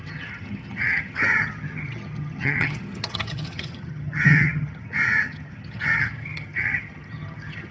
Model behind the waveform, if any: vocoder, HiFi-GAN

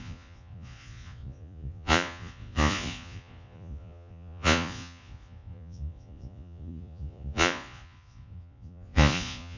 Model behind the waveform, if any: vocoder, Vocos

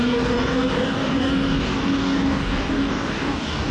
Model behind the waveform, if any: codec, DAC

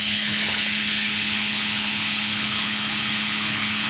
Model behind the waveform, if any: codec, HILCodec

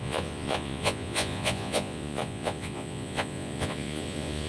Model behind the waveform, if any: vocoder, Vocos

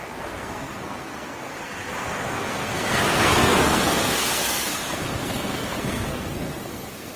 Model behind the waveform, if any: codec, SNAC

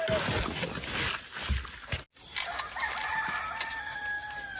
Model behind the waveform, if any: none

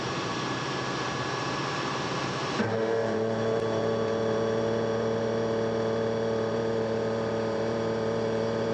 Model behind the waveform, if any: vocoder, BigVGAN v2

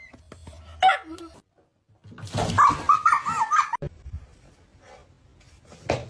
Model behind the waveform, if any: none